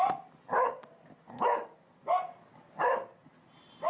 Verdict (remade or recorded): recorded